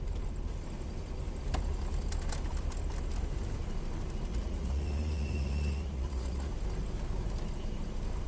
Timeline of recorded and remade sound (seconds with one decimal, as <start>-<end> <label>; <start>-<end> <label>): 0.0-4.3 recorded; 4.3-6.5 remade; 6.5-8.3 recorded